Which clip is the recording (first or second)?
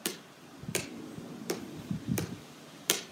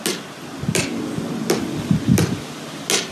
second